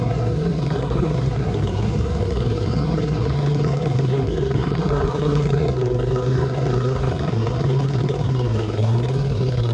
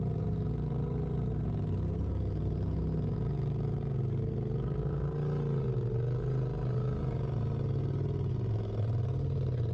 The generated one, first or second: first